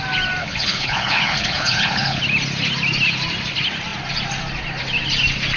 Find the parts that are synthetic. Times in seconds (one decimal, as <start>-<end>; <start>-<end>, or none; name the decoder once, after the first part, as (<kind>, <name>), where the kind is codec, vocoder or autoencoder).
0.4-2.2 (codec, HILCodec)